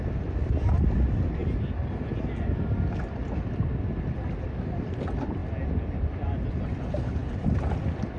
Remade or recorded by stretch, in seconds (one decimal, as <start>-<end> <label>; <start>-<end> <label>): 0.0-8.2 recorded